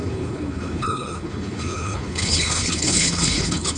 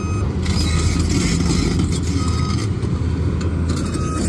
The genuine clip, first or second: second